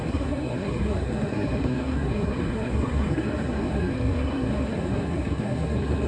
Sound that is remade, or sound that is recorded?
remade